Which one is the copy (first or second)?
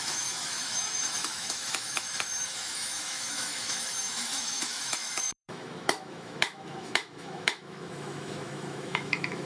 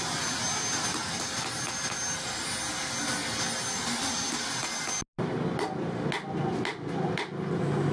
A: first